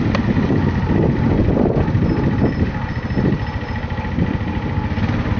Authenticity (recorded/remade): recorded